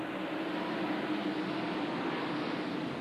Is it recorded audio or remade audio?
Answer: recorded